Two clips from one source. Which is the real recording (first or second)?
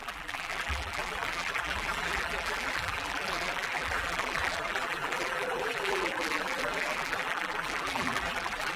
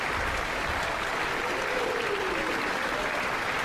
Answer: second